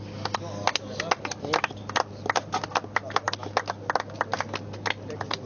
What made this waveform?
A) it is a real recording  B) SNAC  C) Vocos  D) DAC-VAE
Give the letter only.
A